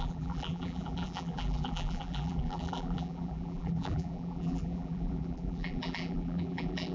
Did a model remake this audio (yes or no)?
yes